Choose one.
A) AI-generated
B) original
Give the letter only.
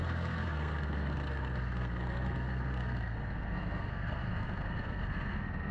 A